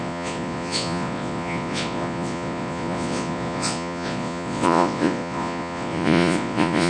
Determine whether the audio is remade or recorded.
remade